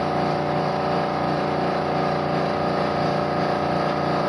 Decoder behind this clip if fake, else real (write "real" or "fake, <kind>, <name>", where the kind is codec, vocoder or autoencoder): real